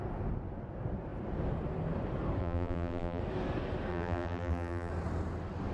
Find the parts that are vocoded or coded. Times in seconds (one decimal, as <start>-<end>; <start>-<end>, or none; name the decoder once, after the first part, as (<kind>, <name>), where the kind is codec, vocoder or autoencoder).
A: 2.4-3.2 (vocoder, BigVGAN v2); 3.9-4.9